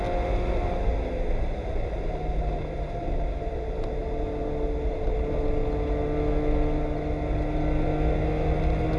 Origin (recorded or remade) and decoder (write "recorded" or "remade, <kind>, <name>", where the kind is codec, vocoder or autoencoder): recorded